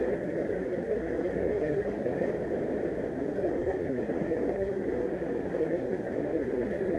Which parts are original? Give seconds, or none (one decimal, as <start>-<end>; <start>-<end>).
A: 2.3-3.1